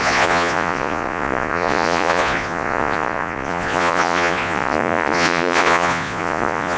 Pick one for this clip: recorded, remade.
remade